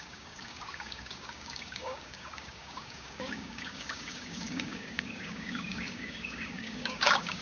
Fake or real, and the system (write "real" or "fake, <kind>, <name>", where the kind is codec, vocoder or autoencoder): fake, codec, DAC